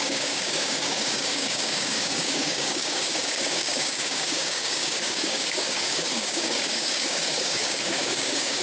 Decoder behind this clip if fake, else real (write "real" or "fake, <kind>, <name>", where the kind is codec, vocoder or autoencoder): fake, codec, DAC